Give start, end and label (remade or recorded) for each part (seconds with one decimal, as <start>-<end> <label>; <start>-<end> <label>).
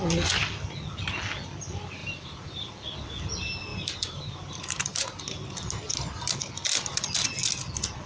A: 0.0-2.0 recorded; 2.0-2.7 remade; 2.7-3.7 recorded; 3.7-5.2 remade; 5.2-8.1 recorded